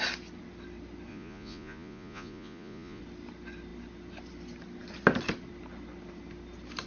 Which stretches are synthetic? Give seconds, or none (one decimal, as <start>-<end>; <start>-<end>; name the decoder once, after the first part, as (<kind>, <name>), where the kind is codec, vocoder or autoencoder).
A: 1.1-3.0 (vocoder, Vocos)